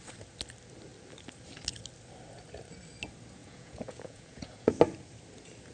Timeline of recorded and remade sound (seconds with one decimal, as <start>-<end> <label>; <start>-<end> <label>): 0.0-3.4 recorded; 3.4-4.7 remade; 4.7-5.7 recorded